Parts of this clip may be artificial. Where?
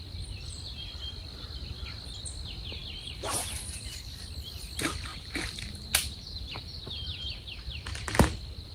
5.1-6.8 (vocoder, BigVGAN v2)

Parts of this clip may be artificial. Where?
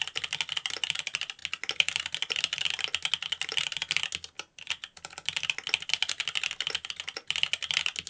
none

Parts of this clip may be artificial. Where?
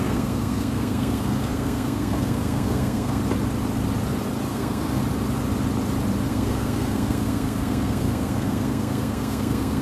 0.0-3.2 (codec, SNAC); 4.5-5.0; 6.3-9.8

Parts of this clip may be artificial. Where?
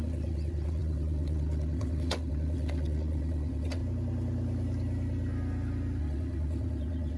0.0-3.8 (vocoder, WaveNeXt); 6.0-7.2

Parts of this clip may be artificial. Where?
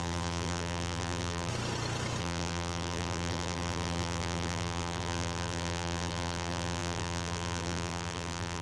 0.0-1.5 (vocoder, BigVGAN v2); 2.2-8.6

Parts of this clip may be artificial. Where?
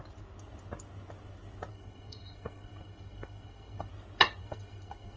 1.7-3.9 (codec, SNAC); 4.4-5.2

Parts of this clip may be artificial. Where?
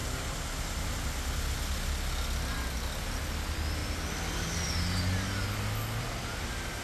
2.7-3.8 (vocoder, BigVGAN v2); 6.0-6.8